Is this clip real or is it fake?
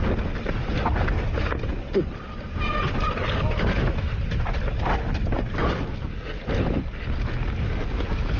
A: real